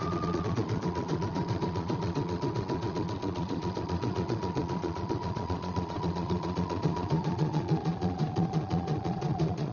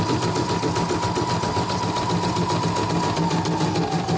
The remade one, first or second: first